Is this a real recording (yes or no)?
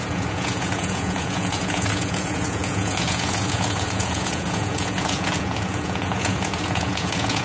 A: no